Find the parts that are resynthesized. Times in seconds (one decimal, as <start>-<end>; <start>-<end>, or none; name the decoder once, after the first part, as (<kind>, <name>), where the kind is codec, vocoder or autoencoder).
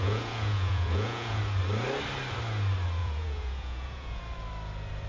0.0-1.4 (vocoder, Vocos); 3.0-4.2